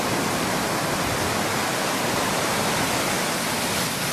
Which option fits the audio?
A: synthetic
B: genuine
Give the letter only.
B